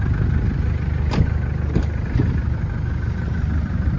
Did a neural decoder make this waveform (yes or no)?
no